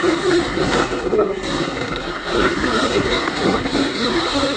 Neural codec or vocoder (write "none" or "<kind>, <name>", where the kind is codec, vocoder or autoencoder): codec, SNAC